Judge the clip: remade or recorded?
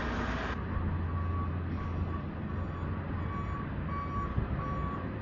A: recorded